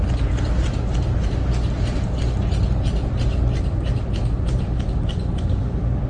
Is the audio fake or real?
real